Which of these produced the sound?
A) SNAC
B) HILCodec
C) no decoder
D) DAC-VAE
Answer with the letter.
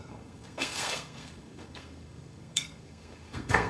A